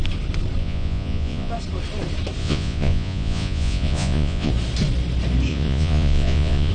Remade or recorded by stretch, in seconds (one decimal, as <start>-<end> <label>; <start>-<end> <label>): 0.0-0.6 recorded; 0.6-1.5 remade; 1.5-2.4 recorded; 2.4-4.5 remade; 4.5-5.5 recorded; 5.5-6.7 remade

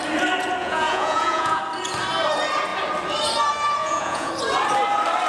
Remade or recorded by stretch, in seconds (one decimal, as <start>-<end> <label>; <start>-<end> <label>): 0.0-0.6 recorded; 0.6-1.6 remade; 1.6-3.8 recorded; 3.8-4.3 remade; 4.3-5.3 recorded

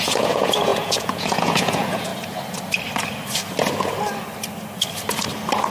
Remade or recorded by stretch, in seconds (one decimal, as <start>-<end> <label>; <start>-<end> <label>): 0.0-2.1 remade; 2.1-5.7 recorded

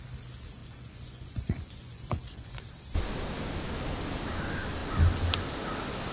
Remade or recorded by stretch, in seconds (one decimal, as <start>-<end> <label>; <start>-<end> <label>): 0.0-0.6 recorded; 0.6-2.6 remade; 2.6-6.1 recorded

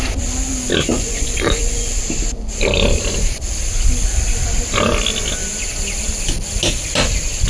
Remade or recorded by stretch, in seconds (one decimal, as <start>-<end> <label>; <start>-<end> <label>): 0.0-0.9 recorded; 0.9-2.0 remade; 2.0-7.5 recorded

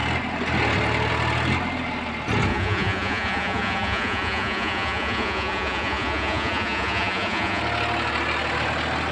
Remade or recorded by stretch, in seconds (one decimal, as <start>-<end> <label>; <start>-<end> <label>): 0.0-2.5 recorded; 2.5-7.6 remade; 7.6-9.1 recorded

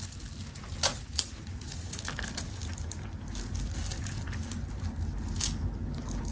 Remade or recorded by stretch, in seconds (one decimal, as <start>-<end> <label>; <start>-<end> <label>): 0.0-0.9 recorded; 0.9-2.0 remade; 2.0-6.3 recorded

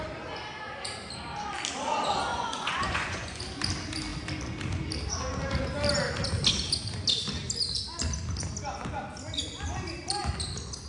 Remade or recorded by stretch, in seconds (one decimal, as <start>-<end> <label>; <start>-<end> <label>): 0.0-2.3 recorded; 2.3-3.4 remade; 3.4-10.9 recorded